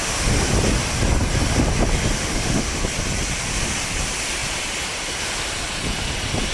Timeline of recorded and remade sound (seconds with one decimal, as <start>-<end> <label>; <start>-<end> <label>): 0.0-0.5 remade; 0.5-2.2 recorded; 2.2-2.8 remade; 2.8-6.5 recorded